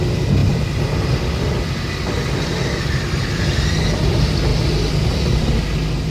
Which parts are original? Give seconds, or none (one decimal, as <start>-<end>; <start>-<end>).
0.0-6.1

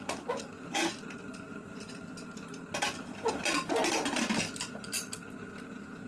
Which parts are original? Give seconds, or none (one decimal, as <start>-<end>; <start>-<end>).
0.0-6.1

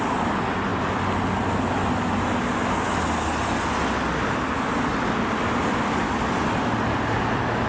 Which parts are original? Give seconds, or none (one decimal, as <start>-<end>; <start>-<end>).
0.0-7.7